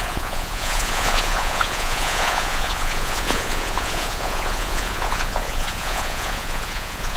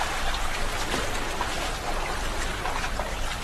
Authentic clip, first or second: second